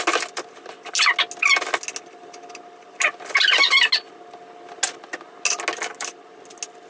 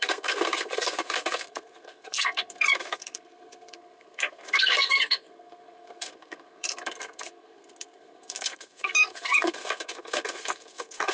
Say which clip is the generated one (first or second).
second